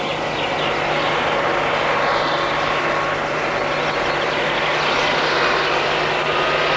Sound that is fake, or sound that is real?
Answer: real